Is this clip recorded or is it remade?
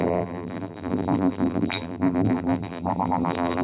remade